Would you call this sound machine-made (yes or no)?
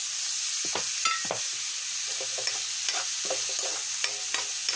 no